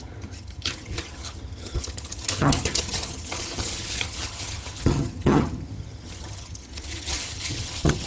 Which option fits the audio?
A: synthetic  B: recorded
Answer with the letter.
A